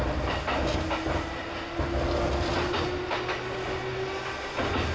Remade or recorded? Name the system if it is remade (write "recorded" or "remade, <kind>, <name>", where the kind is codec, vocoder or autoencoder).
recorded